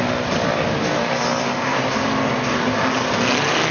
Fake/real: real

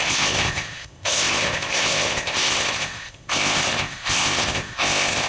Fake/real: fake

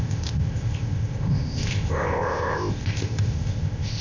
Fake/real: fake